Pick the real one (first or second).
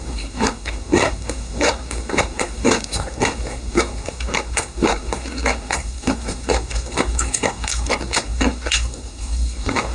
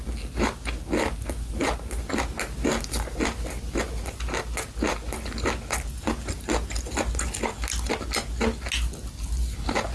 second